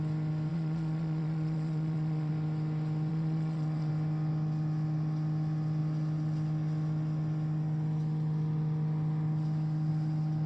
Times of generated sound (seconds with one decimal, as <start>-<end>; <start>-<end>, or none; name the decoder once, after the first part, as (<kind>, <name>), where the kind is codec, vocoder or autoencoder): 0.5-2.3 (vocoder, Vocos); 3.1-3.9